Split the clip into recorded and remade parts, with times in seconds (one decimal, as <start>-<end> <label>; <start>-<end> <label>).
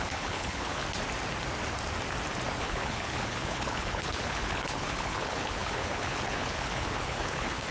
0.0-0.8 remade; 0.8-2.6 recorded; 2.6-7.7 remade